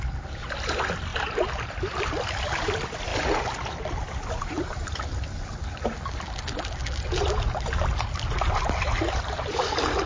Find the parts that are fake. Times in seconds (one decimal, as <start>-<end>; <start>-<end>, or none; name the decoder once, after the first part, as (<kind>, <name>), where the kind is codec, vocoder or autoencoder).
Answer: 0.0-3.1 (vocoder, BigVGAN v2); 3.9-4.9